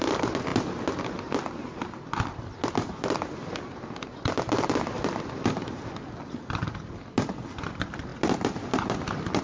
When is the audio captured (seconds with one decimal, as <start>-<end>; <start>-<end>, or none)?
0.0-9.4